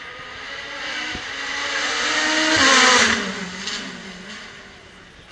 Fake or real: real